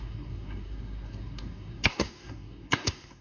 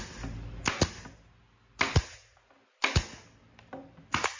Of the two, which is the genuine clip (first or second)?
second